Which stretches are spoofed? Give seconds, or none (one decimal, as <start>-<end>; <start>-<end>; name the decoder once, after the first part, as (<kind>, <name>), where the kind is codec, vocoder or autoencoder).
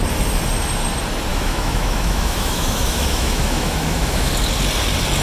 1.3-4.3 (autoencoder, DAC-VAE)